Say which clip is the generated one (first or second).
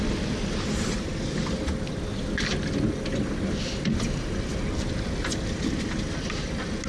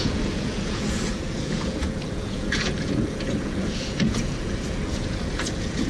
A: second